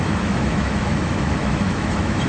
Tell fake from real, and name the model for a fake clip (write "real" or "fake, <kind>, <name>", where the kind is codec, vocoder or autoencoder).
fake, autoencoder, DAC-VAE